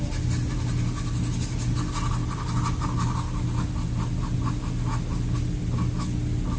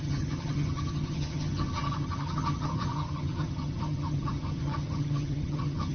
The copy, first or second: second